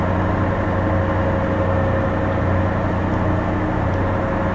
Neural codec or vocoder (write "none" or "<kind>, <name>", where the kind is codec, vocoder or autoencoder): none